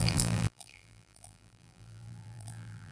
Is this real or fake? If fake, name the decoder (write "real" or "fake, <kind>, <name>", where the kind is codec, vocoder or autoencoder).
fake, vocoder, BigVGAN v2